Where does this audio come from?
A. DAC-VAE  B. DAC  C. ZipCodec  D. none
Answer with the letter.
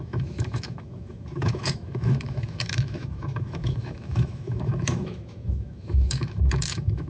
A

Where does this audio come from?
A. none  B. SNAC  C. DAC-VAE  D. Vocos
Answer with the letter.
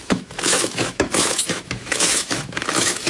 C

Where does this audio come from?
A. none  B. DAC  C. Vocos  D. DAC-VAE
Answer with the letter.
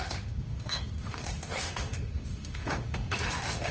D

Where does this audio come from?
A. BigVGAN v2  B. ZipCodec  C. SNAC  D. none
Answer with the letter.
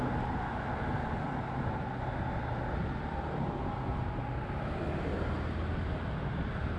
D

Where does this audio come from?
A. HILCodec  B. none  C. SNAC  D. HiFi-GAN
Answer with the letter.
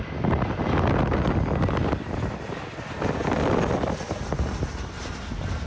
B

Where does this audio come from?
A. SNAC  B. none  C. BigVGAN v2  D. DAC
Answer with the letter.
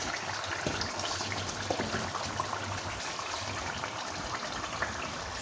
B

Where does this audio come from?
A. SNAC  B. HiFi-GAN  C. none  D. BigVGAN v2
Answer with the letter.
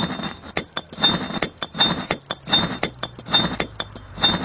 C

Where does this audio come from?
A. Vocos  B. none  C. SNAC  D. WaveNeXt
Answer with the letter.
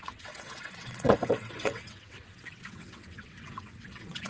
D